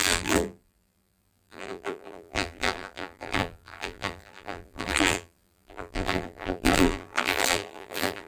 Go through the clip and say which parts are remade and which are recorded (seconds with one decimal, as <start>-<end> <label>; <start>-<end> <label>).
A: 0.0-8.3 remade